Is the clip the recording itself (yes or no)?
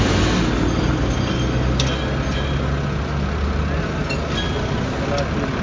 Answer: yes